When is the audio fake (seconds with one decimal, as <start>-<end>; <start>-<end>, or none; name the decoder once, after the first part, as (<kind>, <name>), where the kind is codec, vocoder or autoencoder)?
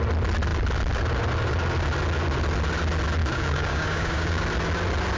3.2-4.4 (codec, DAC)